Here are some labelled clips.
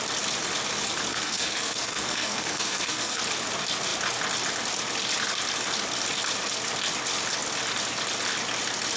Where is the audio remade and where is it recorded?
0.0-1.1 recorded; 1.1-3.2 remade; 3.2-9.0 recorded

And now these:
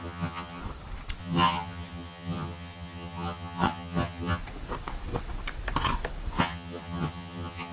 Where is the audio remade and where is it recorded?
0.0-0.6 remade; 0.6-1.2 recorded; 1.2-4.4 remade; 4.4-6.4 recorded; 6.4-7.7 remade

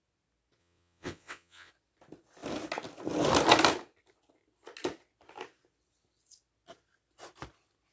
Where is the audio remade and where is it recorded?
0.0-0.6 recorded; 0.6-1.7 remade; 1.7-7.9 recorded

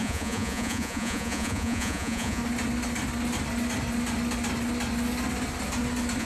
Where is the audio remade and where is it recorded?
0.0-2.4 remade; 2.4-6.2 recorded

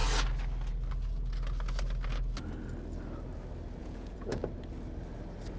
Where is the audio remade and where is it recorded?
0.0-3.8 recorded; 3.8-4.4 remade; 4.4-5.6 recorded

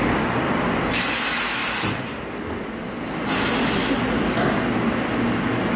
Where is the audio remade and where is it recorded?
0.0-5.8 recorded

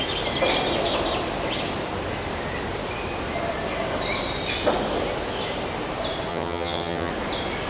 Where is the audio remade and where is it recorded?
0.0-6.3 recorded; 6.3-7.1 remade; 7.1-7.7 recorded